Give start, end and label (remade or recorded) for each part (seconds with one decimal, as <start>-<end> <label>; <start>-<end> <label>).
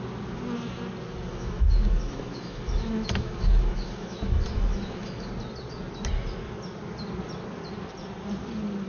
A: 0.0-1.3 recorded; 1.3-5.3 remade; 5.3-8.9 recorded